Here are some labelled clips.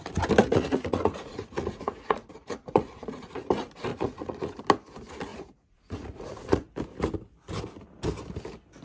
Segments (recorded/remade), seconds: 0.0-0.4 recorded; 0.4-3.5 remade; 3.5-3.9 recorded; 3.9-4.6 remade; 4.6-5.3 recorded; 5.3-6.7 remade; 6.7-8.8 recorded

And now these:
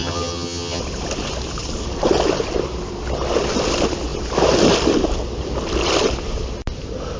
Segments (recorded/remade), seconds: 0.0-0.8 remade; 0.8-7.2 recorded

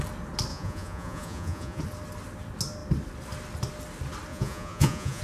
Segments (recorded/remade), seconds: 0.0-0.5 recorded; 0.5-1.8 remade; 1.8-4.3 recorded; 4.3-5.2 remade

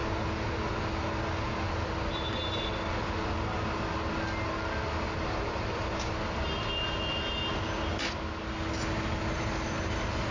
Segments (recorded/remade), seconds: 0.0-10.3 recorded

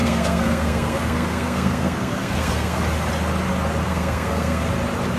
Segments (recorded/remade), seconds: 0.0-2.8 remade; 2.8-3.8 recorded; 3.8-4.7 remade; 4.7-5.2 recorded

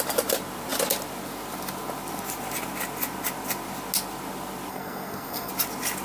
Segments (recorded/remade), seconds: 0.0-4.7 recorded; 4.7-5.5 remade; 5.5-6.0 recorded

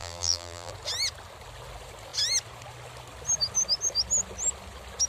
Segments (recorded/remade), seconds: 0.0-0.7 remade; 0.7-5.1 recorded

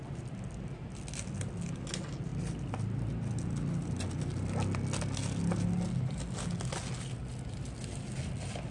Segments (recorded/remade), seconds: 0.0-8.7 recorded